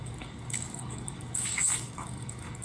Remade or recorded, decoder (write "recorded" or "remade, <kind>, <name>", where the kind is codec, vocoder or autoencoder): remade, codec, DAC